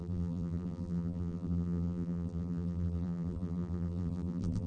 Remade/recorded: remade